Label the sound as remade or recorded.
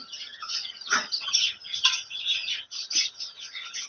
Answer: remade